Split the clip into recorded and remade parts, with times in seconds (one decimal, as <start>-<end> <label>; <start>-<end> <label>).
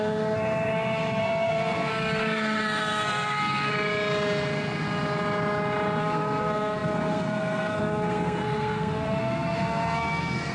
0.0-3.7 remade; 3.7-6.0 recorded; 6.0-10.5 remade